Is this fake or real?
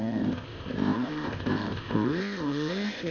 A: fake